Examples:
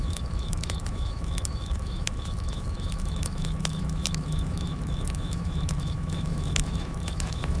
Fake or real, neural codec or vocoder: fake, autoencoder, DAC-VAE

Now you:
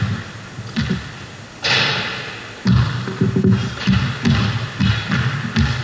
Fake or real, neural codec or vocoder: real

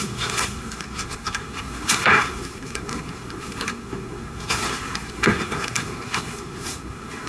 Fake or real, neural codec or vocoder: fake, codec, SNAC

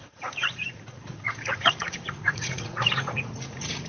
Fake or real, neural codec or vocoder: fake, vocoder, Vocos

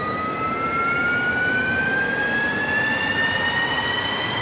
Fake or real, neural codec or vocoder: real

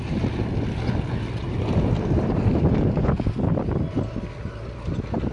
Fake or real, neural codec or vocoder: real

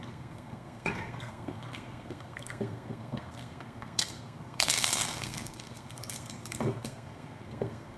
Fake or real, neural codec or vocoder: fake, codec, SNAC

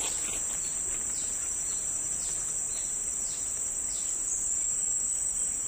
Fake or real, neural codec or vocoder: real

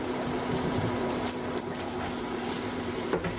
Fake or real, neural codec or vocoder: fake, vocoder, BigVGAN v2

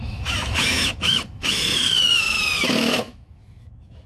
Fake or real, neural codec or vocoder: fake, autoencoder, DAC-VAE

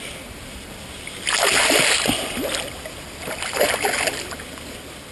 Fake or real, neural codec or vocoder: real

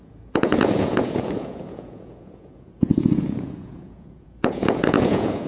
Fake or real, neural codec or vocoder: fake, vocoder, Vocos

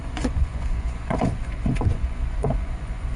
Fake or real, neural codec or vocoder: fake, vocoder, Vocos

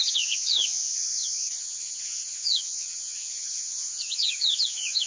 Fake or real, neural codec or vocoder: fake, vocoder, Vocos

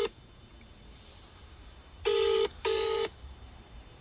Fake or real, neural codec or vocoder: fake, vocoder, BigVGAN v2